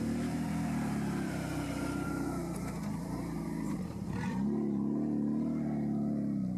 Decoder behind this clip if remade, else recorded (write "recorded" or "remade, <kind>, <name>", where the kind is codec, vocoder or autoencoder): remade, vocoder, BigVGAN v2